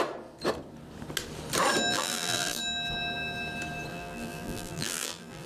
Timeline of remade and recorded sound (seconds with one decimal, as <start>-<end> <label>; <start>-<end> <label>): 0.0-1.9 recorded; 1.9-2.6 remade; 2.6-3.9 recorded; 3.9-5.5 remade